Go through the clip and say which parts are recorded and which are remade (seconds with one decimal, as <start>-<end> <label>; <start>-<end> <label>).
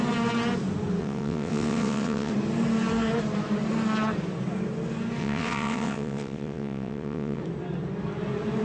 0.0-1.0 recorded; 1.0-2.3 remade; 2.3-5.2 recorded; 5.2-7.4 remade; 7.4-8.6 recorded